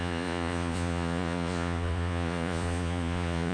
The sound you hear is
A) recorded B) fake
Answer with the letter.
B